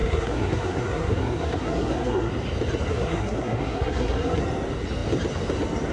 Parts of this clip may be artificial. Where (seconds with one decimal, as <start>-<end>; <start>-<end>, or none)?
0.0-2.3; 2.9-4.4